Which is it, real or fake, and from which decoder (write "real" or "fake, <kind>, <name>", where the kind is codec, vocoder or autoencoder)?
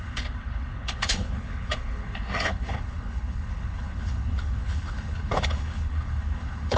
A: fake, codec, HILCodec